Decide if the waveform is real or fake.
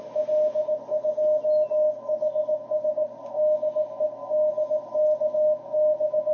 real